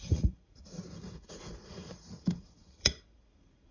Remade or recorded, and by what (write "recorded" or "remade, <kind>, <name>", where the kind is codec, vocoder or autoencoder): remade, vocoder, Vocos